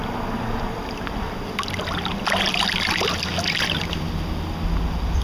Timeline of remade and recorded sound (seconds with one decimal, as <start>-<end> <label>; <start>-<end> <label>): 0.0-5.2 recorded